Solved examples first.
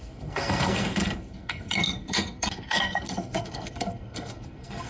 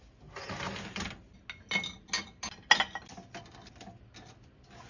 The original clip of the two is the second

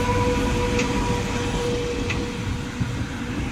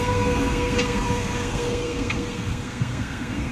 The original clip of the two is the first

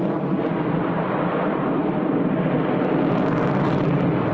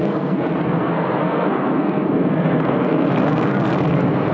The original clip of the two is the first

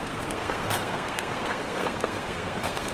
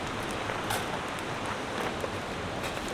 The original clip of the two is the second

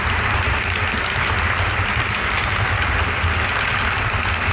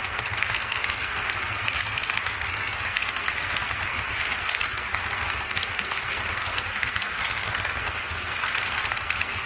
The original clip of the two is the first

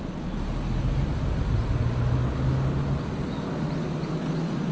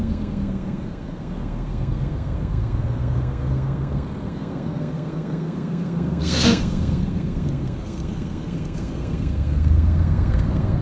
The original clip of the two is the first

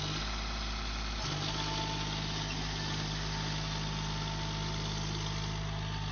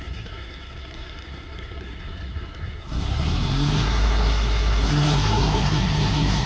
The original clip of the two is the first